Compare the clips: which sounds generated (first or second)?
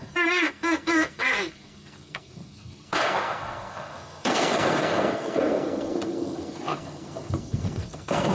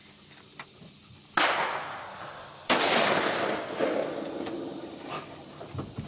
first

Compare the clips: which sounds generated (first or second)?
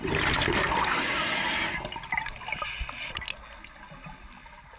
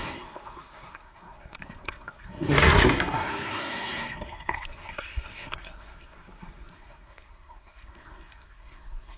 second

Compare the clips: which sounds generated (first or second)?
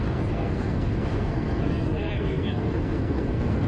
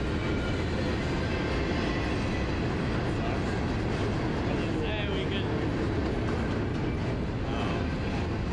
first